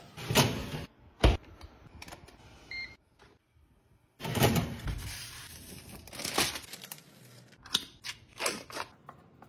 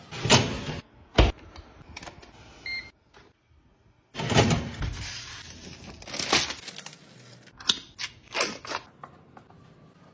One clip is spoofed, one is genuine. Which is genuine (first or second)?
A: second